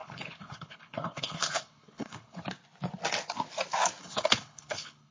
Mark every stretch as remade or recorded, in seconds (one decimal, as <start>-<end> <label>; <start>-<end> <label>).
0.0-2.4 remade; 2.4-4.0 recorded; 4.0-5.1 remade